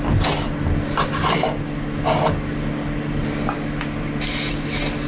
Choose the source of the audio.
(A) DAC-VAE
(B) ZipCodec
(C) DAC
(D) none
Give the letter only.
D